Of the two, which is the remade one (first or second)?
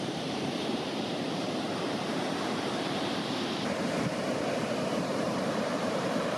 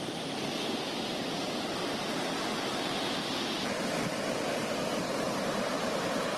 first